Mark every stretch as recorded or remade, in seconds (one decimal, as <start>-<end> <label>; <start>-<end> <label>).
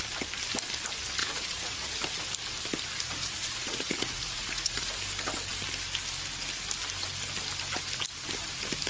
0.0-1.2 recorded; 1.2-1.9 remade; 1.9-3.2 recorded; 3.2-4.9 remade; 4.9-8.9 recorded